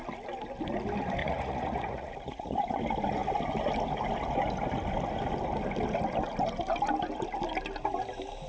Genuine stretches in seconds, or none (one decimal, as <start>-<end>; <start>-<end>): 0.0-1.2; 2.8-8.5